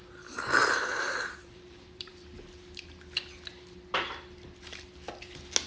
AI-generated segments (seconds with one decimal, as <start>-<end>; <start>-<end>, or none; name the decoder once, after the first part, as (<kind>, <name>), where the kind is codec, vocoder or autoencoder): 0.6-2.1 (vocoder, BigVGAN v2)